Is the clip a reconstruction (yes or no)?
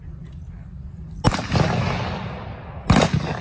no